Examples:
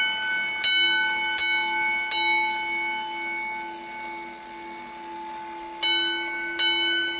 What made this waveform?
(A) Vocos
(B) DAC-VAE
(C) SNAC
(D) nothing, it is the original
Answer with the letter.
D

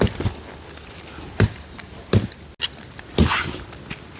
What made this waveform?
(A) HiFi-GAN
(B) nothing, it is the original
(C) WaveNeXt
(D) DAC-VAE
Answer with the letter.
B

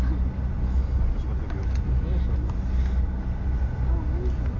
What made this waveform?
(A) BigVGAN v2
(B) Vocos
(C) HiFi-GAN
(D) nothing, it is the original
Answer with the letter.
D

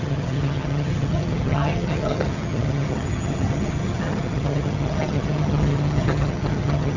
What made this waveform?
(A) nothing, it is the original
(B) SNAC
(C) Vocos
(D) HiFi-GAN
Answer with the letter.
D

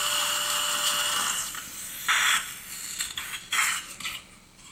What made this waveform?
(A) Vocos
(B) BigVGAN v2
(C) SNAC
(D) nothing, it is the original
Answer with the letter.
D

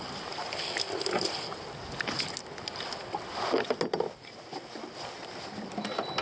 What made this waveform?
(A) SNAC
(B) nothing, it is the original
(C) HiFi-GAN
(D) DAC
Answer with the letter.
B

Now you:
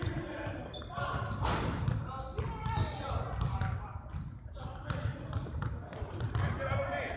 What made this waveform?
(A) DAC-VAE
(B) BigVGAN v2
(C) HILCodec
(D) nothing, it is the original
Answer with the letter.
D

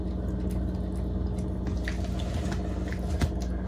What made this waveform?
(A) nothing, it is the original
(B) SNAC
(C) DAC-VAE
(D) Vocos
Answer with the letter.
A